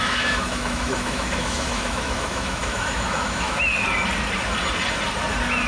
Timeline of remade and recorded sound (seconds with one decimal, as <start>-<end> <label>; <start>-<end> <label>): 0.0-3.7 remade; 3.7-5.7 recorded